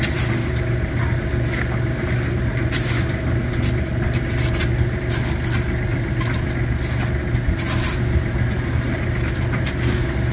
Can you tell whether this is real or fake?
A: real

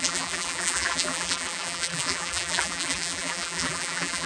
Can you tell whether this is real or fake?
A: fake